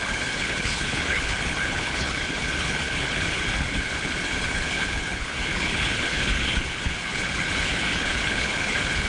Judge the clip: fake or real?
fake